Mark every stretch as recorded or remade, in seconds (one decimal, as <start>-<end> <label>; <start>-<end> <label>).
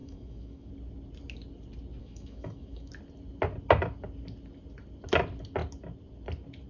0.0-0.7 remade; 0.7-2.0 recorded; 2.0-2.9 remade; 2.9-6.7 recorded